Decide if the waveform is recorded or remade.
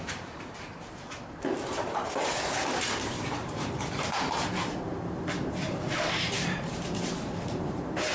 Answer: remade